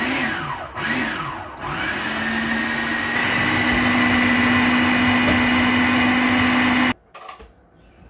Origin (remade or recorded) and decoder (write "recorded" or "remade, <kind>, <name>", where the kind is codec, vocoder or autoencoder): recorded